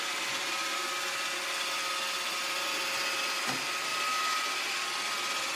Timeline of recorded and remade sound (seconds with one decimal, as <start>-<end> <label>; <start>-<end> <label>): 0.0-5.6 recorded